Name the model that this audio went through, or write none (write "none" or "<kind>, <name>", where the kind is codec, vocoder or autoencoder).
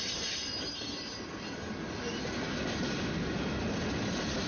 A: none